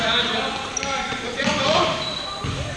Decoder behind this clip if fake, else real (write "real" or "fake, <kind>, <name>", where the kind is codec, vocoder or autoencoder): real